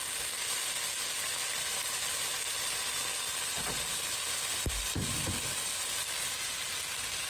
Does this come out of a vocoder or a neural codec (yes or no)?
no